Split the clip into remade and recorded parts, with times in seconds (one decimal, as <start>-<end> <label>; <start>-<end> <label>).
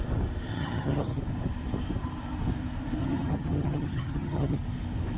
0.0-0.5 recorded; 0.5-1.2 remade; 1.2-3.0 recorded; 3.0-4.6 remade; 4.6-5.2 recorded